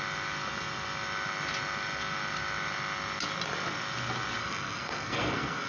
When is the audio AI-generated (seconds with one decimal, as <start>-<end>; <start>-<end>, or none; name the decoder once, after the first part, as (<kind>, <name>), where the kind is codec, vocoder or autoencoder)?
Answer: 4.4-5.7 (codec, SNAC)